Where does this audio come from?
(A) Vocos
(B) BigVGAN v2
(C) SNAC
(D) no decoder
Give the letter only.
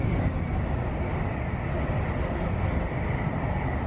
D